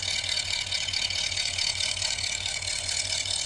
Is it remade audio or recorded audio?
remade